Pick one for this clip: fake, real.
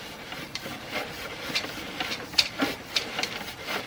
fake